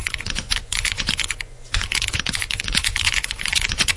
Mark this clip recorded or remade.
remade